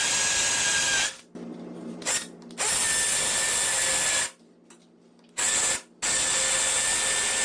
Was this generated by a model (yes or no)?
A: no